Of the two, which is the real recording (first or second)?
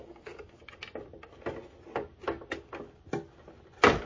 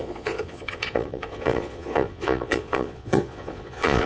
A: first